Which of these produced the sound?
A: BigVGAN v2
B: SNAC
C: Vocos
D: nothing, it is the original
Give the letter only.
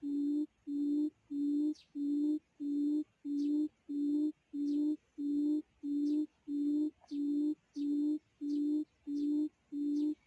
D